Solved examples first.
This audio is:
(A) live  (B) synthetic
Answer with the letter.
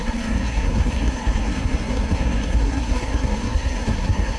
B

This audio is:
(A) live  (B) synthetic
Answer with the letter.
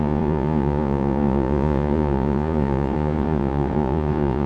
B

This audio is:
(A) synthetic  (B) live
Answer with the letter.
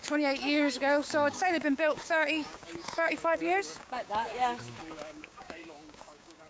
A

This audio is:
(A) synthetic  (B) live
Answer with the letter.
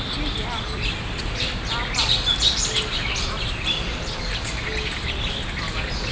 B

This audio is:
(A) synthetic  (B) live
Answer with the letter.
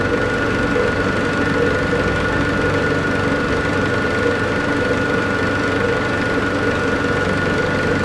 B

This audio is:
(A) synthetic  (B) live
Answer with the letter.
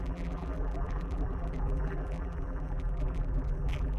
A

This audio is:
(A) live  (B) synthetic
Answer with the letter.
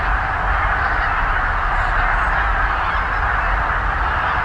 A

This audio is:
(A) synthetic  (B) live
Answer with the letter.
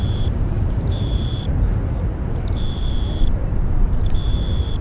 A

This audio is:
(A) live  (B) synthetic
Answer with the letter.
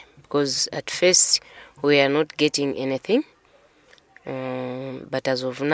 A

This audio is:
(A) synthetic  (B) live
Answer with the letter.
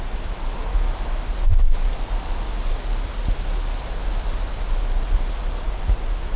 B